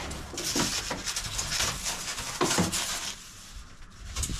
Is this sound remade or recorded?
recorded